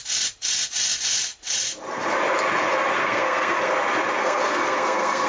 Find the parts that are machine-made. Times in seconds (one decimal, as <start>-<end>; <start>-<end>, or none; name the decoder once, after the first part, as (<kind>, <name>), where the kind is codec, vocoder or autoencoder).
3.0-3.7 (codec, SNAC); 4.2-5.3